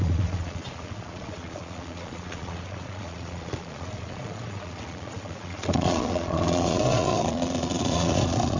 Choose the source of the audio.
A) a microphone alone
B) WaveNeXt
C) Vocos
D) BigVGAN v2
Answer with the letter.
C